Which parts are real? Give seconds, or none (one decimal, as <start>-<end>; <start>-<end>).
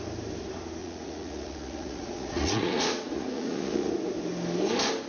0.0-0.8; 3.9-5.1